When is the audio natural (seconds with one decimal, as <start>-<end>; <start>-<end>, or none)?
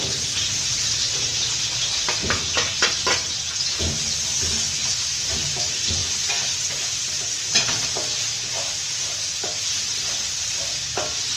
0.0-11.4